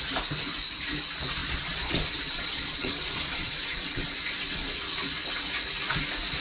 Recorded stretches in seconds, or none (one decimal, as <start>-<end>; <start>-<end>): 0.0-1.4; 5.2-6.4